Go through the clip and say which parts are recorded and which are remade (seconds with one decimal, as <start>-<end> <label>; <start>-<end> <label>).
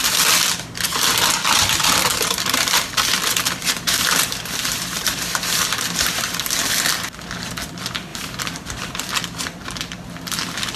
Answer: 0.0-2.1 recorded; 2.1-5.6 remade; 5.6-8.1 recorded; 8.1-9.0 remade; 9.0-10.8 recorded